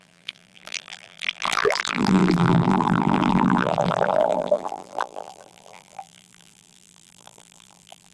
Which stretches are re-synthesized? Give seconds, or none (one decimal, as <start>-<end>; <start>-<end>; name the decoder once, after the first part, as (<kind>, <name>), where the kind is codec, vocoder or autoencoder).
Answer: 0.0-8.1 (vocoder, BigVGAN v2)